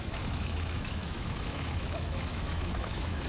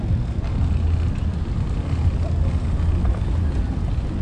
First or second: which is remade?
first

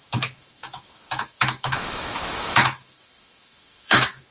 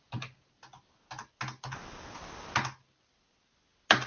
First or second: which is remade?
first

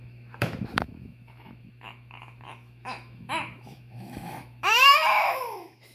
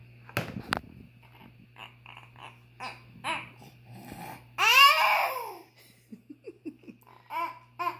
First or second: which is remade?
first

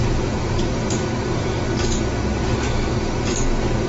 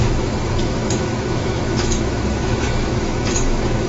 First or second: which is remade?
second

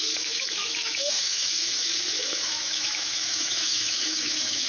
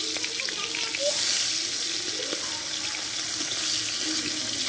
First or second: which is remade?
first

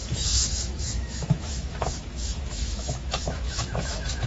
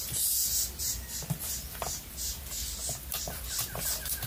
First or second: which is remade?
first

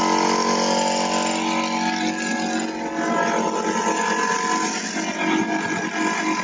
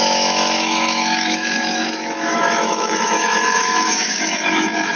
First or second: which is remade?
second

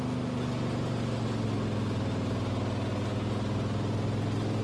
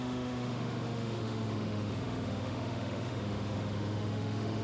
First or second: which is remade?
second